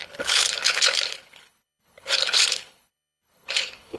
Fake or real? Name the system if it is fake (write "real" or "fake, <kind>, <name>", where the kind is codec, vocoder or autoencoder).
fake, codec, HILCodec